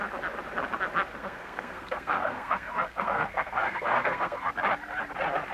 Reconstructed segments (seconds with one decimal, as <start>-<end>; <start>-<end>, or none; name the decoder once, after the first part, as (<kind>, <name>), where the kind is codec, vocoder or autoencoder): 1.2-4.5 (codec, SNAC)